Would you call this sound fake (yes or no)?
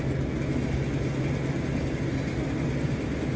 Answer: no